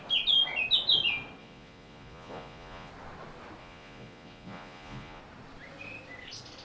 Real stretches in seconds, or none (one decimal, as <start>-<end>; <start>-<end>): 0.0-1.4; 2.9-3.6; 5.2-6.6